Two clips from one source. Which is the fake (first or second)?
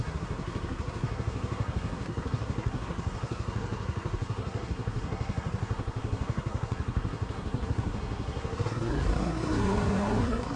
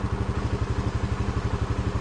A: first